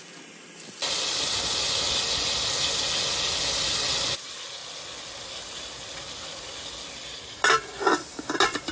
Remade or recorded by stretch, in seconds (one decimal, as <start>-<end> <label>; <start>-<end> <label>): 0.0-8.7 recorded